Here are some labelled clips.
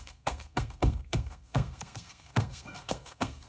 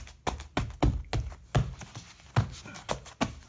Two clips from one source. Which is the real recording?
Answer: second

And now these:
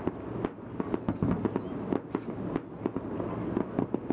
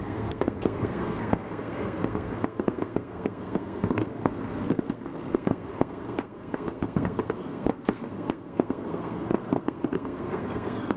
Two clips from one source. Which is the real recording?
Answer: first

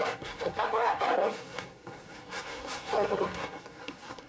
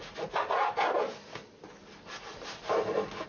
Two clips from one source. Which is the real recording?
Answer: second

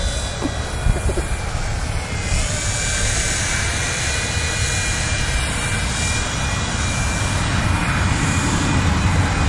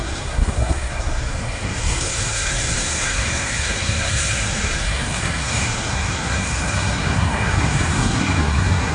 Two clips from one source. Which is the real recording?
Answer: first